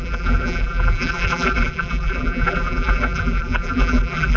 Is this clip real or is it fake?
fake